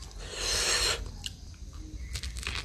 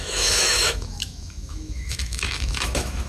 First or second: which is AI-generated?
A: second